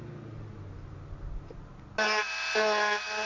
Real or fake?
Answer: real